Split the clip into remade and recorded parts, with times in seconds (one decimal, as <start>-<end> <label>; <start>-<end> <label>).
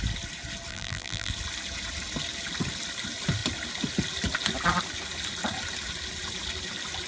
0.0-0.7 recorded; 0.7-1.3 remade; 1.3-7.1 recorded